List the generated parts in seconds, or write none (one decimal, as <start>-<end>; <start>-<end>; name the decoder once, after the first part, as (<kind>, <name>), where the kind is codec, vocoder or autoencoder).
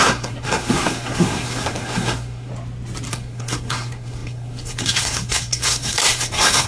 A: 0.0-2.5 (codec, SNAC); 3.1-6.7